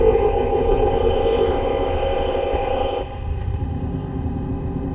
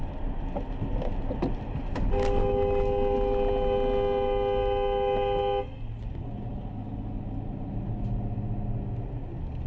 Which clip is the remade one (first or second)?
first